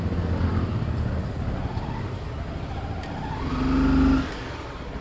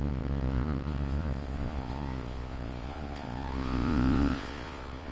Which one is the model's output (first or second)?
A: second